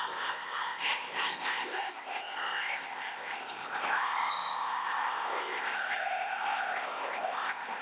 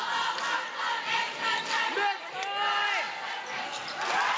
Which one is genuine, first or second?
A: second